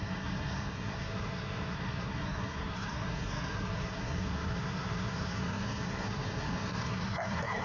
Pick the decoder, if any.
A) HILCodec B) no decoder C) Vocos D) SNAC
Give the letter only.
D